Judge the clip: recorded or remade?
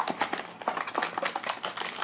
recorded